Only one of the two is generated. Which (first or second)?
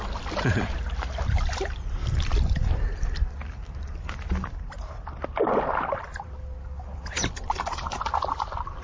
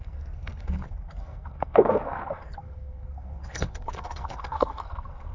second